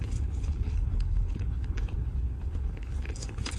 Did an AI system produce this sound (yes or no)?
yes